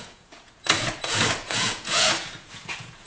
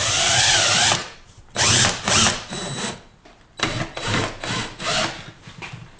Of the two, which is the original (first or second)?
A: second